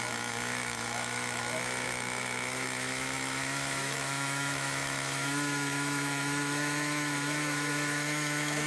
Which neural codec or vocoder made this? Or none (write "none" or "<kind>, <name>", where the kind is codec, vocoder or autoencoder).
autoencoder, DAC-VAE